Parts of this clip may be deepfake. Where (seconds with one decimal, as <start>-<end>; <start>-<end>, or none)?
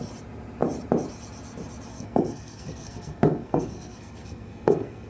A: 1.9-5.1